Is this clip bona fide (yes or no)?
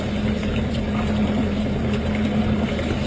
yes